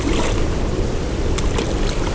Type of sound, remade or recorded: recorded